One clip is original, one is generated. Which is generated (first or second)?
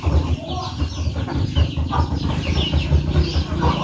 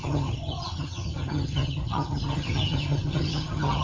second